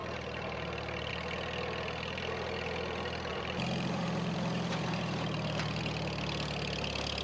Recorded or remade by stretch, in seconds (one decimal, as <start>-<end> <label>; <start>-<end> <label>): 0.0-1.1 remade; 1.1-3.3 recorded; 3.3-5.8 remade; 5.8-7.2 recorded